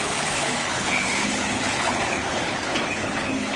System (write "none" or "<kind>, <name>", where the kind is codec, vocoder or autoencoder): codec, HILCodec